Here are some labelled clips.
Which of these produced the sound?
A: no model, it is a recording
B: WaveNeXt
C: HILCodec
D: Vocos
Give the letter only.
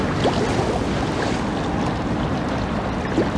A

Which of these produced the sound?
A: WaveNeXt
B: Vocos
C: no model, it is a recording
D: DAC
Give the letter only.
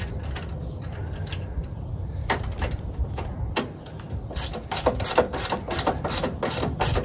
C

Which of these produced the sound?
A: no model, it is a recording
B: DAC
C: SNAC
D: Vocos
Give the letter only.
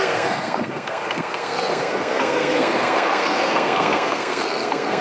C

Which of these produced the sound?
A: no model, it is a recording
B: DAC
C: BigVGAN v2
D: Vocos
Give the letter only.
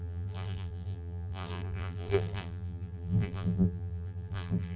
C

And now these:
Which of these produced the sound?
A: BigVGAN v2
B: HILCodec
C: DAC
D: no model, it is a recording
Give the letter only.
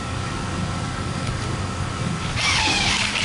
C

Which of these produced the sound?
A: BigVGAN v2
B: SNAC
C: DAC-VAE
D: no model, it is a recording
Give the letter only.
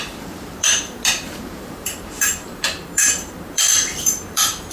A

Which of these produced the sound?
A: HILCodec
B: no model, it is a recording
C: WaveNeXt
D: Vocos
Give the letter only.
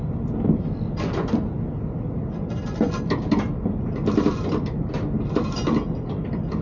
B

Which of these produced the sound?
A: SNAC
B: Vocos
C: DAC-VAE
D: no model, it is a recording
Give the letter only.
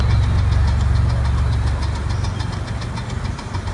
D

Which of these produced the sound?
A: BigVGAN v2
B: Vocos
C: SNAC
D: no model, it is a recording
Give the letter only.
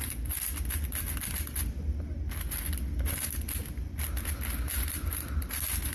D